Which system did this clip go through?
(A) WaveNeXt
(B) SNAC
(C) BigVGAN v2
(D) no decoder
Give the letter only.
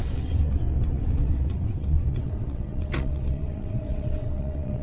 A